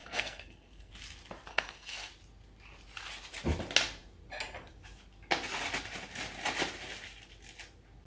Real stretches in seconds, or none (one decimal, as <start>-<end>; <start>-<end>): 0.9-1.5; 2.1-8.1